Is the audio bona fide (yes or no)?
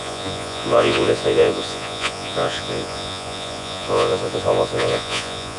no